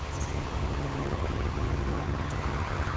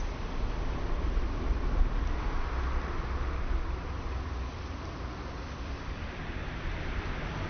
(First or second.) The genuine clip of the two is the second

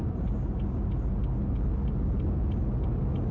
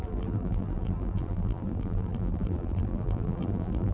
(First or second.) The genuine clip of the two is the first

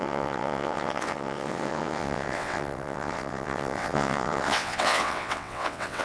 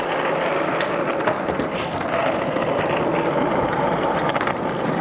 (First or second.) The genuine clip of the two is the second